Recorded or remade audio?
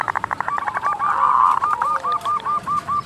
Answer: recorded